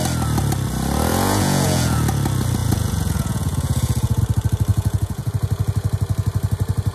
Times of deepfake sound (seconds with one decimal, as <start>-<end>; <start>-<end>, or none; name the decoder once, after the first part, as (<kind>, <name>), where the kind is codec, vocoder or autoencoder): 1.1-2.0 (vocoder, Vocos); 2.6-4.2; 4.7-5.3